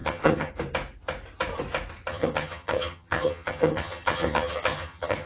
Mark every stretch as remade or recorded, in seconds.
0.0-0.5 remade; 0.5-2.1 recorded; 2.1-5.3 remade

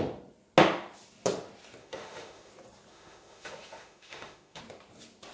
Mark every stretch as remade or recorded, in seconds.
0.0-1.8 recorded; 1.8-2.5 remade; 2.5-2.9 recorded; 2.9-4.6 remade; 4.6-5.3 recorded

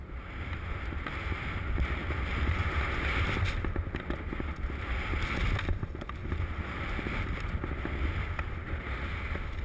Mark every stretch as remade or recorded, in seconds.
0.0-9.6 recorded

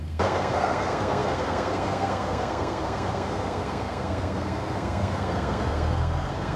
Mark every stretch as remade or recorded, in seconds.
0.0-6.6 remade

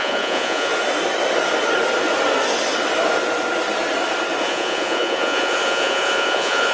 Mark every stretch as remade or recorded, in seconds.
0.0-0.7 remade; 0.7-4.4 recorded; 4.4-6.7 remade

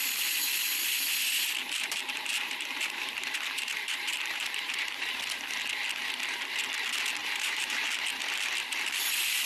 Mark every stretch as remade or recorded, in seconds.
0.0-1.6 recorded; 1.6-5.0 remade; 5.0-7.2 recorded; 7.2-7.9 remade; 7.9-9.5 recorded

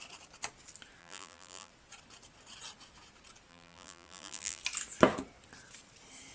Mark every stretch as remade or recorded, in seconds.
0.0-1.0 recorded; 1.0-1.7 remade; 1.7-3.5 recorded; 3.5-4.6 remade; 4.6-6.3 recorded